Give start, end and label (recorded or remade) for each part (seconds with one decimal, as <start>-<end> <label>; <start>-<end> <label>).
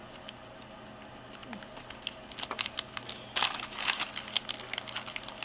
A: 0.0-5.4 recorded